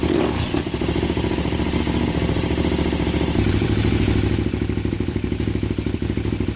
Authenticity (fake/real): fake